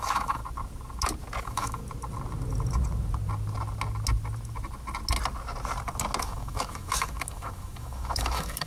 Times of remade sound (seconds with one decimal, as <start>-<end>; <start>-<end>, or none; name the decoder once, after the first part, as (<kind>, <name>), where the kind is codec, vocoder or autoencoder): 0.0-0.4 (autoencoder, DAC-VAE); 1.4-1.8; 6.2-8.7